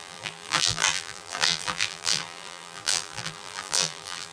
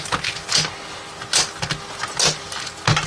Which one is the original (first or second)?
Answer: second